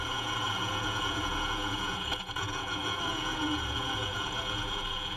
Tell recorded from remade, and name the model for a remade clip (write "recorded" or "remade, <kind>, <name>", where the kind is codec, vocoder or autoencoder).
remade, vocoder, Vocos